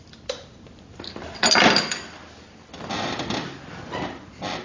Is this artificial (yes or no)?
no